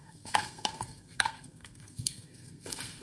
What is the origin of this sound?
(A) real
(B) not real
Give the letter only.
B